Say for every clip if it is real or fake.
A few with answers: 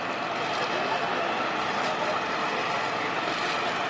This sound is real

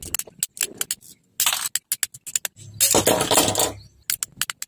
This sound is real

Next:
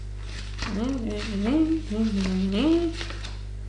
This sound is real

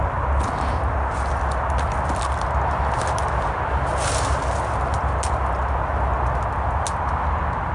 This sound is real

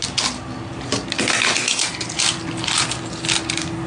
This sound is real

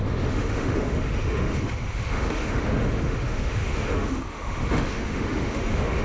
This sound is fake